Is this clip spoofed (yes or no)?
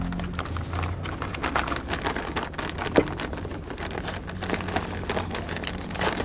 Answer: no